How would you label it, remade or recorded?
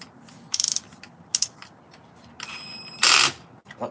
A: recorded